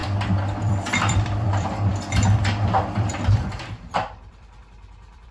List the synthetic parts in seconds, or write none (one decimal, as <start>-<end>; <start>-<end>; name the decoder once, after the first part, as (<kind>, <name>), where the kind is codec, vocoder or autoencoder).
0.6-5.3 (vocoder, BigVGAN v2)